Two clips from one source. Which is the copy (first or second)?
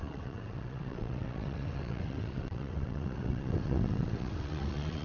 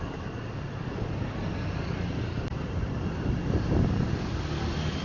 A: first